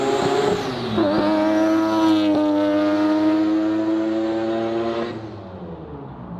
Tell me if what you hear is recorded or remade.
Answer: recorded